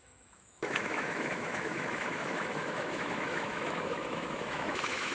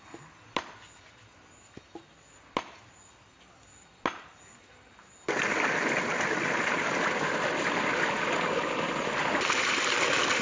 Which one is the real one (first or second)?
second